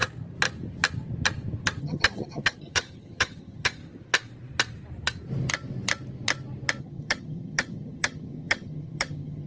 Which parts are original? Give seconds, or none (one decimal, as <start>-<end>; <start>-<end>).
0.0-1.8; 3.8-6.8